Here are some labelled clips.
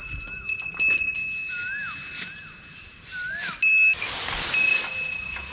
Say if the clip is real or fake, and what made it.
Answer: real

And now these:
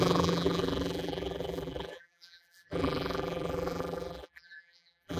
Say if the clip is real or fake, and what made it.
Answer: fake, vocoder, BigVGAN v2